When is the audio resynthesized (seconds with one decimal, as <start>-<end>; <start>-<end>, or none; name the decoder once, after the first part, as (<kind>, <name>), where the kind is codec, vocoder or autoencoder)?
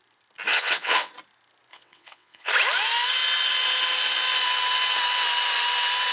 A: 0.5-1.1 (vocoder, WaveNeXt); 1.7-2.5